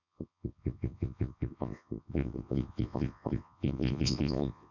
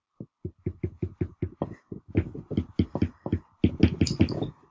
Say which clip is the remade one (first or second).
first